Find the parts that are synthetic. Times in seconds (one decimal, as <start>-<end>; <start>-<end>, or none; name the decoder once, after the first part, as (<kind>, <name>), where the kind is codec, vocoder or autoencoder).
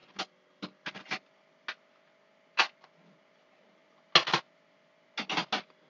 none